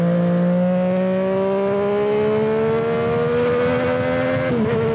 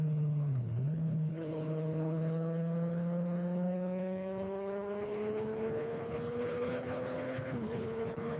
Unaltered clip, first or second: first